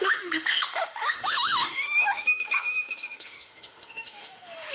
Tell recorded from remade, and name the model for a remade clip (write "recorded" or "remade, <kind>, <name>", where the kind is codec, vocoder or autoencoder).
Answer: remade, autoencoder, DAC-VAE